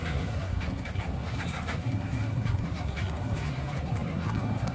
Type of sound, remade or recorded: remade